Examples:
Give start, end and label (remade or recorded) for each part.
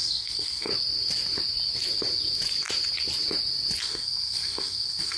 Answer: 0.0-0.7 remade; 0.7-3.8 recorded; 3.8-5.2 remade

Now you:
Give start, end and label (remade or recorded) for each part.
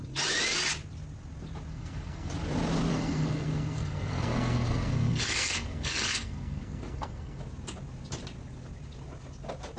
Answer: 0.0-1.7 recorded; 1.7-2.3 remade; 2.3-2.9 recorded; 2.9-7.4 remade; 7.4-9.8 recorded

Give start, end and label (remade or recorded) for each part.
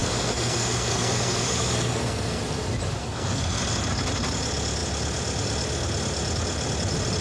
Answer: 0.0-2.4 remade; 2.4-3.0 recorded; 3.0-3.6 remade; 3.6-7.2 recorded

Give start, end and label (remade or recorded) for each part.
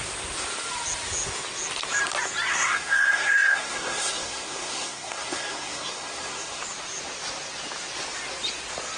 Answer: 0.0-2.5 recorded; 2.5-6.6 remade; 6.6-9.0 recorded